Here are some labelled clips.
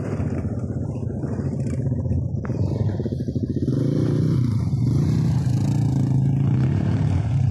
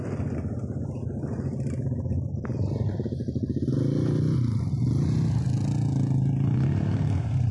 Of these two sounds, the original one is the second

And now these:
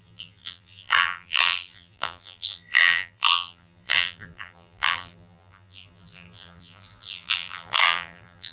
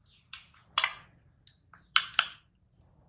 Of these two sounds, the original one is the second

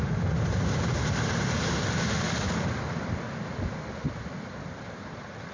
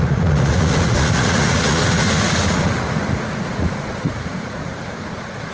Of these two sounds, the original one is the first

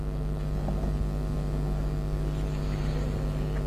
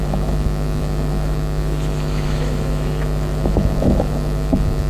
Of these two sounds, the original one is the first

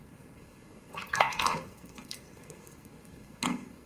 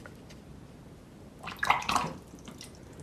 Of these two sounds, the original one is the second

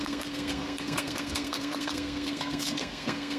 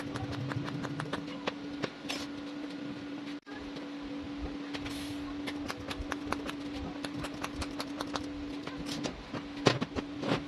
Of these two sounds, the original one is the second